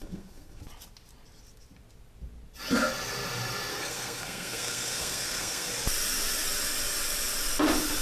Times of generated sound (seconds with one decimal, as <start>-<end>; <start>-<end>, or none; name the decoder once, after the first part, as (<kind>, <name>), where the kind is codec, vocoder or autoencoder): 0.0-0.6 (codec, SNAC); 3.7-5.7